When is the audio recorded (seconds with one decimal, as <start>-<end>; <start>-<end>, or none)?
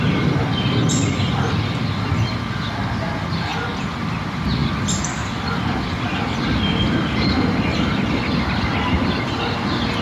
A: 0.0-4.6; 8.2-10.0